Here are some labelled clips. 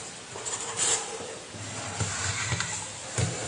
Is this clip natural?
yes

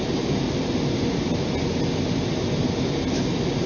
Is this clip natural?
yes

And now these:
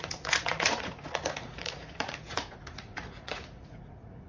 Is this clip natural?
no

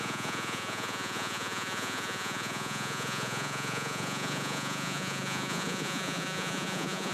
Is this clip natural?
no